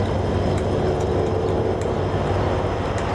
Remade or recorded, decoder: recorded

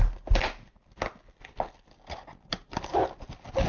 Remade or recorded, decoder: recorded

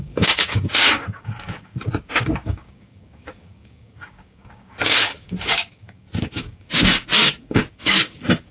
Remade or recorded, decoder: remade, codec, DAC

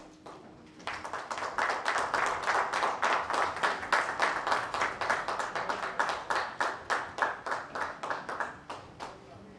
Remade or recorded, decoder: recorded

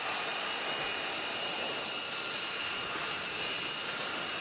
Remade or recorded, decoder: recorded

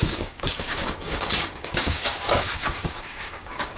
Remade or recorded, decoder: remade, codec, DAC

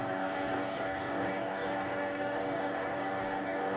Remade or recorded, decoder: remade, codec, DAC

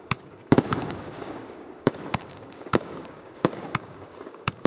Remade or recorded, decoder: remade, codec, DAC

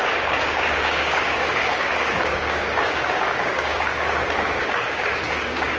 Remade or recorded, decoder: remade, codec, DAC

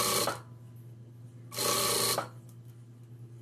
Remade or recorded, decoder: recorded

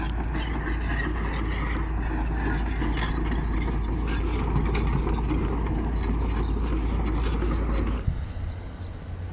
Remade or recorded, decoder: recorded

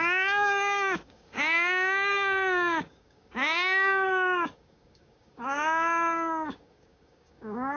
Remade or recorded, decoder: remade, codec, DAC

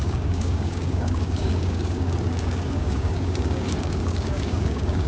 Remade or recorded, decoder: remade, codec, DAC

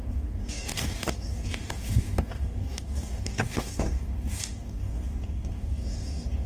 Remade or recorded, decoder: remade, codec, DAC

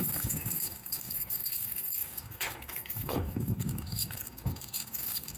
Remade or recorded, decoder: remade, codec, DAC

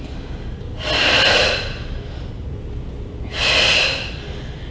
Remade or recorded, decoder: recorded